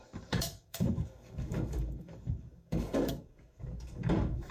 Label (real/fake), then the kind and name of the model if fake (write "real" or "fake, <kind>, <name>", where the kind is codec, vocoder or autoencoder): fake, codec, DAC